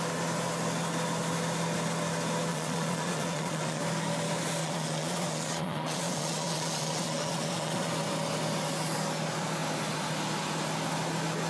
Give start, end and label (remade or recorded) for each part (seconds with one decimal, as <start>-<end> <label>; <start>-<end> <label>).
0.0-2.5 recorded; 2.5-3.8 remade; 3.8-4.6 recorded; 4.6-7.9 remade; 7.9-11.5 recorded